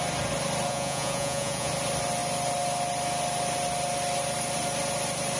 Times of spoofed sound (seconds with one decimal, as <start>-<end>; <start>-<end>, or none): 0.7-1.7